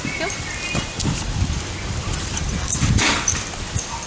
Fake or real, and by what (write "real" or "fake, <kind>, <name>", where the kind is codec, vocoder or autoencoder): fake, vocoder, BigVGAN v2